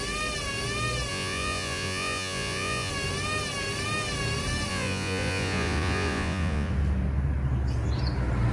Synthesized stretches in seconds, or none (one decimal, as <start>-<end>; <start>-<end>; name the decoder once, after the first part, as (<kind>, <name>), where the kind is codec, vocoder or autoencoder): 1.1-2.9 (vocoder, Vocos); 4.7-6.7

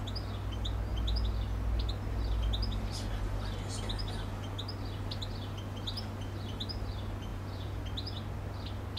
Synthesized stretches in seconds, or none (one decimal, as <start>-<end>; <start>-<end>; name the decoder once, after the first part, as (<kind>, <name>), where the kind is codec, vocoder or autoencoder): 7.3-7.8 (vocoder, Vocos)

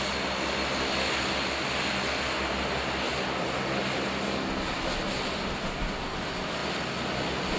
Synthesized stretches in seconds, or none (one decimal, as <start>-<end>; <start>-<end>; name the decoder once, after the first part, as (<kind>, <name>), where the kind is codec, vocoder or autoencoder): none

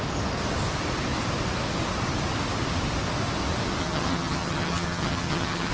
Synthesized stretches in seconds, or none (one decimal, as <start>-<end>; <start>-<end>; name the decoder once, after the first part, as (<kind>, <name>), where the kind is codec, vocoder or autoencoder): 3.8-5.7 (vocoder, HiFi-GAN)

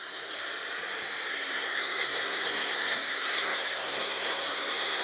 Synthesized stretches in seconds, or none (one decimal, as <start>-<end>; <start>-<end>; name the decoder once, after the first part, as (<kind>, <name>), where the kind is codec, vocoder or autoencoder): 0.0-0.5 (codec, SNAC); 1.3-5.0

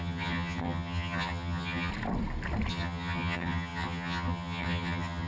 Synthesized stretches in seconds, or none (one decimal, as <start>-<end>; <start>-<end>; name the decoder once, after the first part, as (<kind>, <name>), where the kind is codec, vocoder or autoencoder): 0.0-1.9 (vocoder, HiFi-GAN); 2.7-5.3

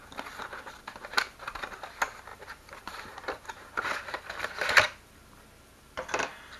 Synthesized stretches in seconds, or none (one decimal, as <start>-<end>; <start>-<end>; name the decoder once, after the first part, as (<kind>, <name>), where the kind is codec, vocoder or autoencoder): 2.3-4.5 (vocoder, BigVGAN v2)

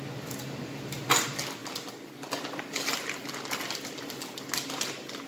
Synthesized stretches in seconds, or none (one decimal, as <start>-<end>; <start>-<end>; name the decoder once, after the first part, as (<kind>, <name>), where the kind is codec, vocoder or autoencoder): none